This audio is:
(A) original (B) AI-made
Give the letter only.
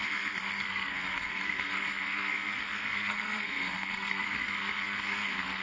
B